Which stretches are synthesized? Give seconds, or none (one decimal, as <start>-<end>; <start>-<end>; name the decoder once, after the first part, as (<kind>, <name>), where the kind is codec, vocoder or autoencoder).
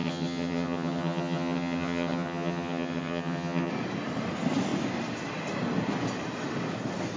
0.0-3.7 (vocoder, HiFi-GAN)